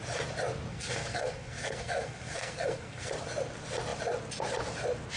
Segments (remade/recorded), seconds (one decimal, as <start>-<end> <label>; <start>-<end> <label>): 0.0-0.7 recorded; 0.7-3.1 remade; 3.1-5.2 recorded

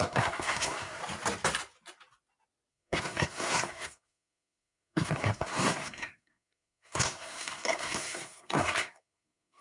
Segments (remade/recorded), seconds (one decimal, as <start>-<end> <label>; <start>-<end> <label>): 0.0-1.0 remade; 1.0-2.7 recorded; 2.7-9.6 remade

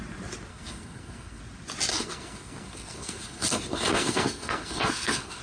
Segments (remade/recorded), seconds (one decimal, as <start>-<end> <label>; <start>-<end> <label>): 0.0-0.5 recorded; 0.5-1.4 remade; 1.4-1.9 recorded; 1.9-5.4 remade

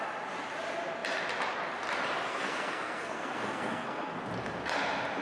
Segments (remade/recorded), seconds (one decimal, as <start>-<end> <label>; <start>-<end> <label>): 0.0-2.3 recorded; 2.3-4.2 remade; 4.2-5.2 recorded

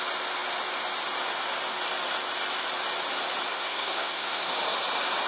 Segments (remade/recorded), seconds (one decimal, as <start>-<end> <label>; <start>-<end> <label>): 0.0-3.5 recorded; 3.5-4.5 remade; 4.5-5.3 recorded

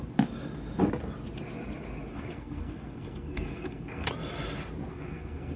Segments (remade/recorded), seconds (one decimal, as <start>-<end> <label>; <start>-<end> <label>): 0.0-2.1 recorded; 2.1-4.1 remade; 4.1-4.9 recorded; 4.9-5.6 remade

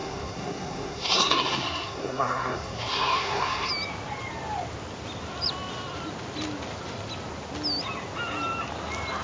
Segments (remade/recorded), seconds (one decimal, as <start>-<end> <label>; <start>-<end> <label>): 0.0-3.7 remade; 3.7-9.2 recorded

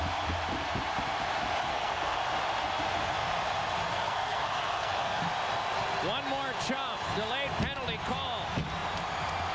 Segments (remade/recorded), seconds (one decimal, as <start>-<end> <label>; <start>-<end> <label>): 0.0-1.7 recorded; 1.7-2.2 remade; 2.2-3.9 recorded; 3.9-5.2 remade; 5.2-9.5 recorded